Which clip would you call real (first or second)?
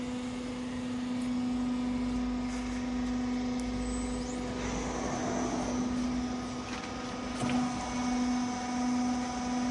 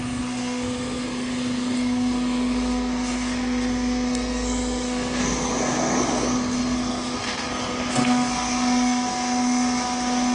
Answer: first